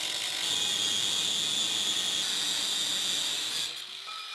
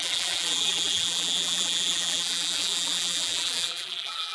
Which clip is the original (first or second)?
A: first